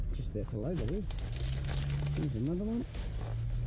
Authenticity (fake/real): real